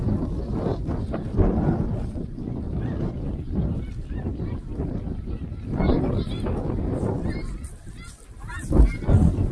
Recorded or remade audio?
recorded